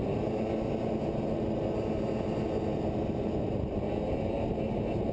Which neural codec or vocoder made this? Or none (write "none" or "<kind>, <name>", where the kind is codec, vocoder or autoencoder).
none